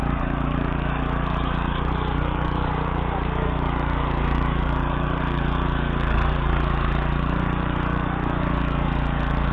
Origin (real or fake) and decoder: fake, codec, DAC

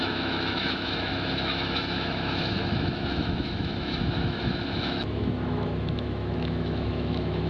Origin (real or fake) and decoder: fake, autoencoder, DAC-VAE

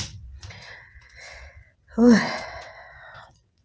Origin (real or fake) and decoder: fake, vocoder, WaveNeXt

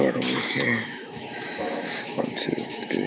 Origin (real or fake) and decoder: fake, autoencoder, DAC-VAE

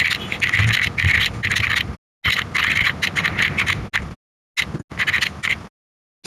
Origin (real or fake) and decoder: real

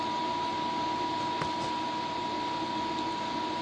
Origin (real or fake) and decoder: real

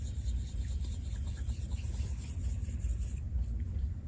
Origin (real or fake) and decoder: fake, vocoder, BigVGAN v2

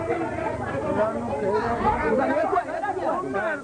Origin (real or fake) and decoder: real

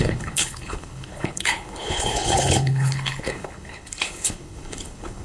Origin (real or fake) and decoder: fake, codec, HILCodec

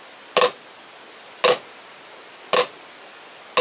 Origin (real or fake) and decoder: real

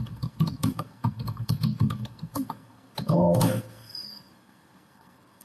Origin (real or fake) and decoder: fake, codec, SNAC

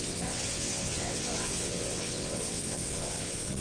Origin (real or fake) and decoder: fake, vocoder, WaveNeXt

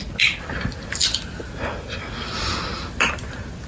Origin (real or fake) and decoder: real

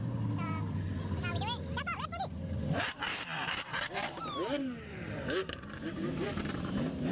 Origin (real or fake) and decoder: fake, vocoder, BigVGAN v2